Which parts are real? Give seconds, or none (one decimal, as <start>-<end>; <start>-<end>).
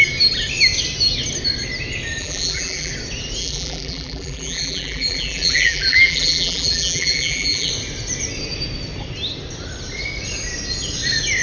0.0-2.2; 2.9-3.4; 7.7-11.4